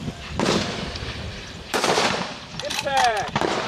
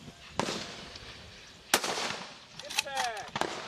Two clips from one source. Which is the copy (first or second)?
first